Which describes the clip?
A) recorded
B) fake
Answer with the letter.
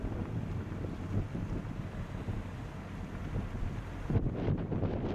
B